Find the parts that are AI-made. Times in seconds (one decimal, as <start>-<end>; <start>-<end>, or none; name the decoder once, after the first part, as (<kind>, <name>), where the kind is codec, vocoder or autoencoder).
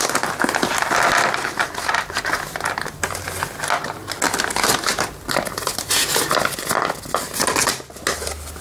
none